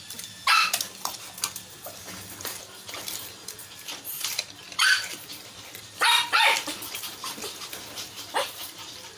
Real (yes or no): no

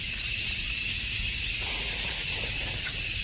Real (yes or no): no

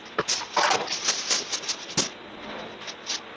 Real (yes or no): yes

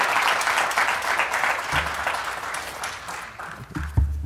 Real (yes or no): yes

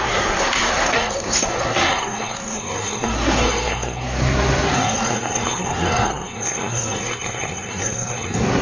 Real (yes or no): no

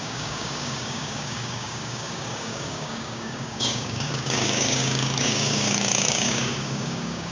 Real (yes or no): no